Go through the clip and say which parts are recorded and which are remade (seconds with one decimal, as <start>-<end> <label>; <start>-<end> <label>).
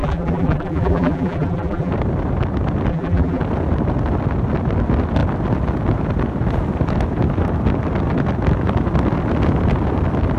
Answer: 0.0-1.9 remade; 1.9-2.9 recorded; 2.9-3.4 remade; 3.4-10.4 recorded